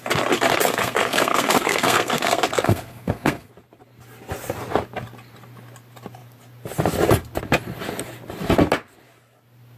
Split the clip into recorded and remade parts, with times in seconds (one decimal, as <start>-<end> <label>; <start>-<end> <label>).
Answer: 0.0-0.6 recorded; 0.6-3.5 remade; 3.5-9.8 recorded